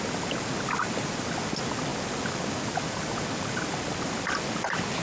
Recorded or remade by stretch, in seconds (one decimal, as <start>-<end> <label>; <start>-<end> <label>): 0.0-5.0 recorded